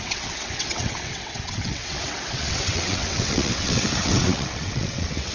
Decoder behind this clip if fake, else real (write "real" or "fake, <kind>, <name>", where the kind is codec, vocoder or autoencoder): fake, vocoder, WaveNeXt